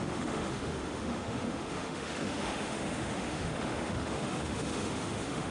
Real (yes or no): no